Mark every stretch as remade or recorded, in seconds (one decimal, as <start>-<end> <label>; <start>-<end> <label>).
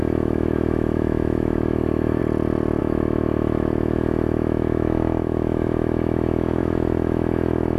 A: 0.0-2.2 remade; 2.2-2.8 recorded; 2.8-7.8 remade